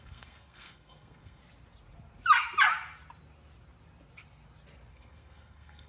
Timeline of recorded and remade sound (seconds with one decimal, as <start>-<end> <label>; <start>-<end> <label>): 0.0-1.4 remade; 1.4-4.9 recorded; 4.9-5.9 remade